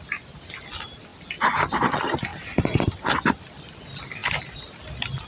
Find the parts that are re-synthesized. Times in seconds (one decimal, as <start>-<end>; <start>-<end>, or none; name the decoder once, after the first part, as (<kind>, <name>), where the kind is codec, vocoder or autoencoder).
none